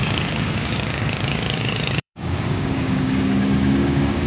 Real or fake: fake